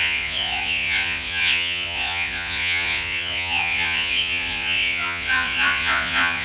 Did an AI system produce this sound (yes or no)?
yes